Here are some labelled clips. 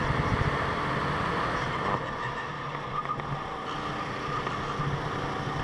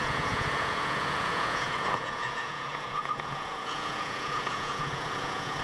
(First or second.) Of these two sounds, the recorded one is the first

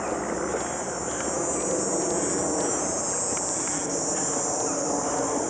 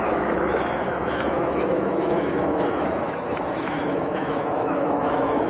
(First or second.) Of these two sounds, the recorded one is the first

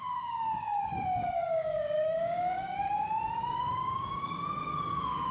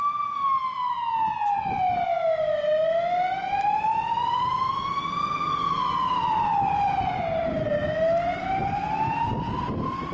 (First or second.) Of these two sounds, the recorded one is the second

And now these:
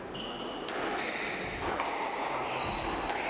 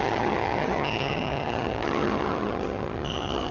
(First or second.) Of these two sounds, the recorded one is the first